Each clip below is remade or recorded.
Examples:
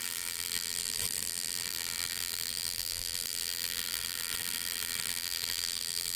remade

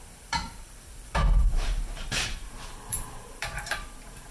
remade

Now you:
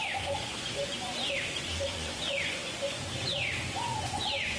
remade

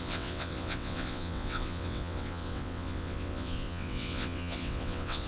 remade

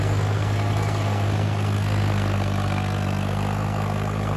remade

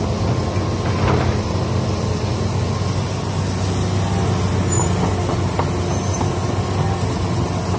recorded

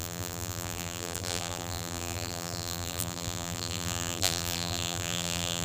remade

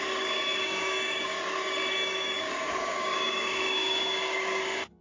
remade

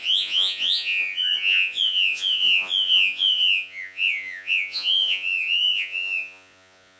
remade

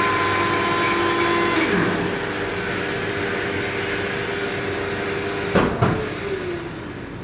recorded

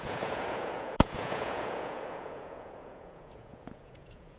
remade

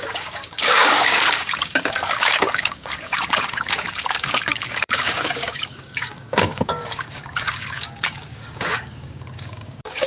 remade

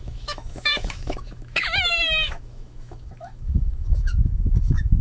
remade